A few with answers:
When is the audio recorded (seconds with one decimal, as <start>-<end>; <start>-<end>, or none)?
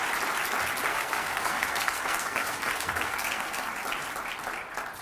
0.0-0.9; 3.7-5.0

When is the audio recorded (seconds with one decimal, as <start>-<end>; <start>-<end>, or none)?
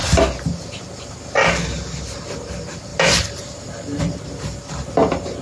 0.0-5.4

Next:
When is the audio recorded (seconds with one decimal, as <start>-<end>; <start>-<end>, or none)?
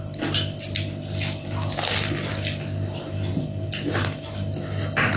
0.0-5.2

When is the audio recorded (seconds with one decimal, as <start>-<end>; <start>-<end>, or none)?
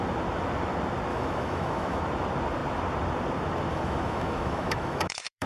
0.0-1.1; 2.0-3.7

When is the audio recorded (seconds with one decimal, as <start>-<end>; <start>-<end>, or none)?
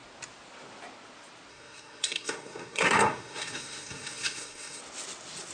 0.0-1.5; 4.8-5.5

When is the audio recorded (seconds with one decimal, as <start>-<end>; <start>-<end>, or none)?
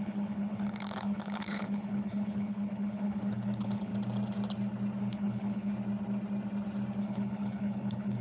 3.9-5.0; 5.7-7.0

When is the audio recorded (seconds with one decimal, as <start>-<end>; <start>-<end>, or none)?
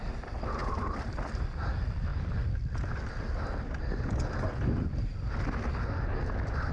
0.0-0.6; 1.3-6.7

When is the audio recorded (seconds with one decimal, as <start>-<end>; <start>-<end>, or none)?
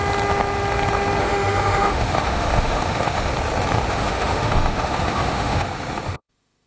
0.0-1.2; 3.3-3.9